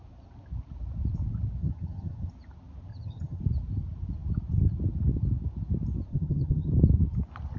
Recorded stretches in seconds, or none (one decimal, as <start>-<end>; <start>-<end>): 0.0-1.6; 2.3-2.9; 3.4-6.1; 6.7-7.6